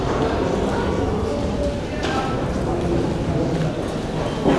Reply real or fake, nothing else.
real